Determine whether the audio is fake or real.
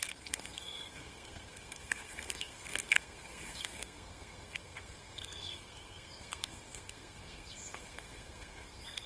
fake